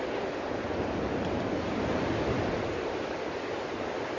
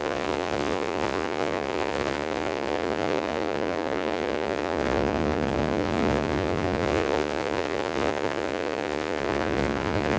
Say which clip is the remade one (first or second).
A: second